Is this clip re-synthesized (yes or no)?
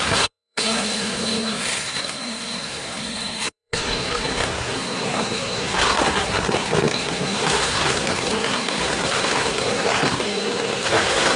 yes